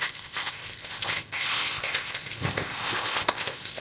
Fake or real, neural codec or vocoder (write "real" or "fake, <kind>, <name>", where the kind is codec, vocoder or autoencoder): fake, codec, ZipCodec